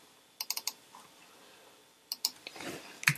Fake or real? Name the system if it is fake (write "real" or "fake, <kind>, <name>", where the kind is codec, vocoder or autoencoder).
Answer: real